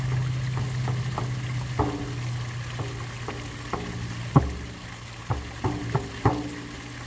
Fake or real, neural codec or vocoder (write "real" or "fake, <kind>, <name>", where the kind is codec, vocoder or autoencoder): real